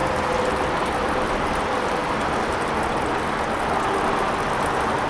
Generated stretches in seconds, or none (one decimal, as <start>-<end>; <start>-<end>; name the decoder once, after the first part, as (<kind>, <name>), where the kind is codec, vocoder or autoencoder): 0.6-2.0 (vocoder, BigVGAN v2)